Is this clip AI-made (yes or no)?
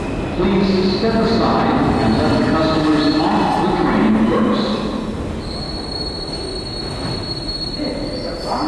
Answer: no